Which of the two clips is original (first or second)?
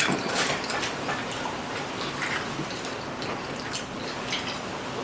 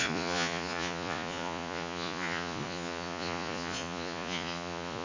first